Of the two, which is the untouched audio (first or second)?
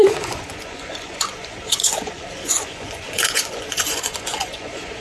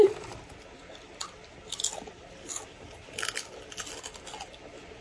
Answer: second